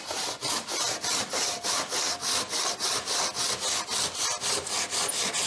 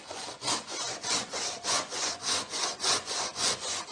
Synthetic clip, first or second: second